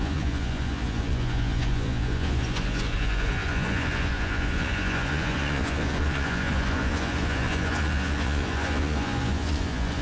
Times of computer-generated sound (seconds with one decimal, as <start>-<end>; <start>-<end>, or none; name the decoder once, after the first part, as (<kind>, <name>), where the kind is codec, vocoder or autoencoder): 0.0-10.0 (vocoder, Vocos)